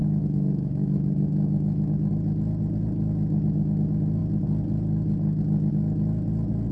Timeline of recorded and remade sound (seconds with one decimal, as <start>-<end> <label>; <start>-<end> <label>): 0.0-2.1 remade; 2.1-6.7 recorded